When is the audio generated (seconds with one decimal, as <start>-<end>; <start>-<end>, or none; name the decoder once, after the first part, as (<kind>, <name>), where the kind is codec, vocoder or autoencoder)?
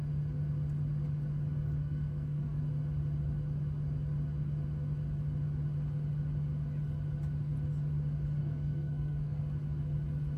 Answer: 1.8-2.6 (codec, SNAC); 8.4-9.4